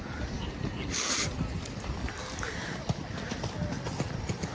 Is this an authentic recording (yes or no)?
yes